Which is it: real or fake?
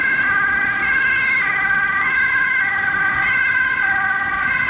real